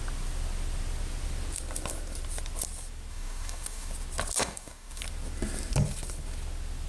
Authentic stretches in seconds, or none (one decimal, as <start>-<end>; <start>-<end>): 0.0-3.1; 3.9-4.4; 5.0-6.9